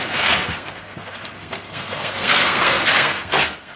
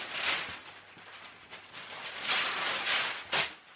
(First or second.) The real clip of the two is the second